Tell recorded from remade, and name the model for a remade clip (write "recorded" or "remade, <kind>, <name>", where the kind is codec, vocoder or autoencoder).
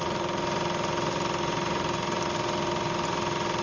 recorded